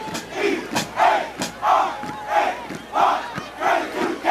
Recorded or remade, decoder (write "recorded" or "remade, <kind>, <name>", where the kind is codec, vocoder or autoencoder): recorded